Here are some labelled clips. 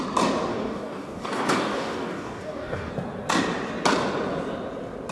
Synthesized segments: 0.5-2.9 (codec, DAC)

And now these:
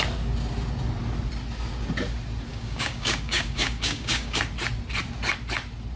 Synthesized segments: 2.5-4.4 (codec, DAC)

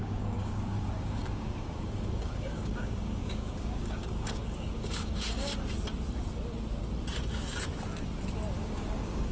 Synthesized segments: 0.0-5.5 (codec, DAC); 8.5-9.3

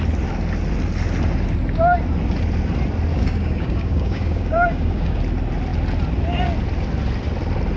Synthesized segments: 3.1-5.2 (codec, DAC)

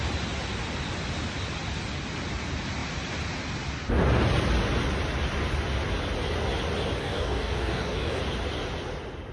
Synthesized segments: 7.0-8.2 (codec, DAC)

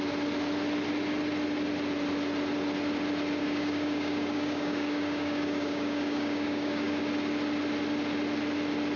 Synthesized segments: 3.4-7.0 (codec, DAC)

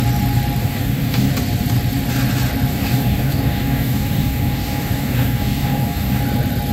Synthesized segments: 0.6-1.3 (codec, DAC); 2.7-6.2